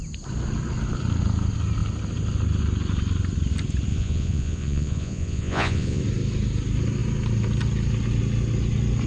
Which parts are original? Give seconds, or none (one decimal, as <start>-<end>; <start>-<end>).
0.0-3.9; 6.0-9.1